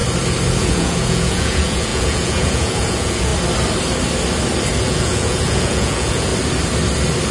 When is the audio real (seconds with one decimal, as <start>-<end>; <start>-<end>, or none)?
0.0-0.6; 3.3-4.8; 6.3-7.3